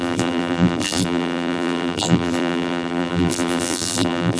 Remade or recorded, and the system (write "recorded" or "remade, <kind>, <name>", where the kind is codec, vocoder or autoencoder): remade, vocoder, BigVGAN v2